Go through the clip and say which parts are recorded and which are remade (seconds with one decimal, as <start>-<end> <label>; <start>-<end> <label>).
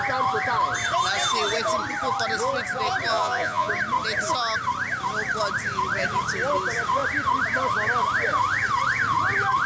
0.0-3.1 recorded; 3.1-3.7 remade; 3.7-9.7 recorded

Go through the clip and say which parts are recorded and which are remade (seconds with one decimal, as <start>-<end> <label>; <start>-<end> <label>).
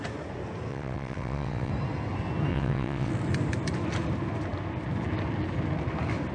0.0-0.7 recorded; 0.7-1.7 remade; 1.7-2.5 recorded; 2.5-3.1 remade; 3.1-6.3 recorded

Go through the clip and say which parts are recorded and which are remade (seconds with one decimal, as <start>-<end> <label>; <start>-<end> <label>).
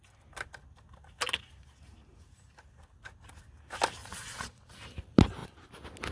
0.0-4.0 recorded; 4.0-4.7 remade; 4.7-6.1 recorded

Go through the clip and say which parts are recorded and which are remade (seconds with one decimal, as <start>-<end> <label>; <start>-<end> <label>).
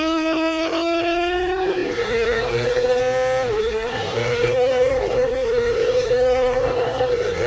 0.0-3.0 remade; 3.0-3.6 recorded; 3.6-7.5 remade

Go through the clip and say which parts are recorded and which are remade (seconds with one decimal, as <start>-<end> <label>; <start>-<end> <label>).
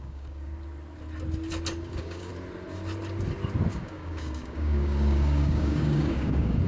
0.0-0.5 remade; 0.5-1.9 recorded; 1.9-2.3 remade; 2.3-3.7 recorded; 3.7-6.7 remade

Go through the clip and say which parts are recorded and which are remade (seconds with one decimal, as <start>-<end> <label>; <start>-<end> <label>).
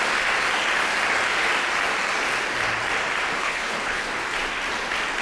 0.0-3.4 recorded; 3.4-4.0 remade; 4.0-5.2 recorded